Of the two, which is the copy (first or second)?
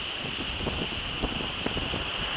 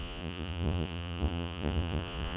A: second